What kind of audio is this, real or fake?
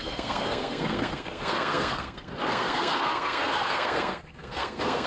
fake